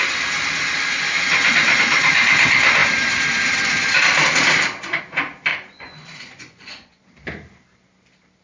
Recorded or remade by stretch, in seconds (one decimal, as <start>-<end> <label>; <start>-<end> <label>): 0.0-5.5 recorded; 5.5-7.0 remade; 7.0-8.4 recorded